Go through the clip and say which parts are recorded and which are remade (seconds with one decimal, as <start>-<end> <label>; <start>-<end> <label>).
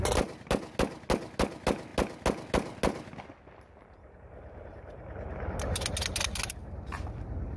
0.0-7.6 recorded